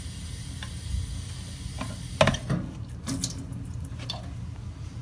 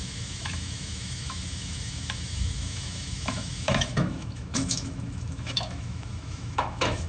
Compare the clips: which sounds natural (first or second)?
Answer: first